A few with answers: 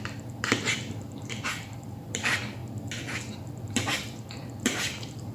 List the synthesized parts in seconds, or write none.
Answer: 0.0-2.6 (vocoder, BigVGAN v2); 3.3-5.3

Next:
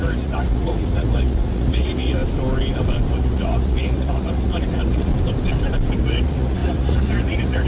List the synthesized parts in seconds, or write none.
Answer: 0.0-2.2 (vocoder, Vocos); 3.1-5.1; 6.0-7.7

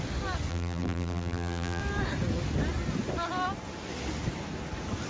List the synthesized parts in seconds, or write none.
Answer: 0.5-1.8 (vocoder, BigVGAN v2)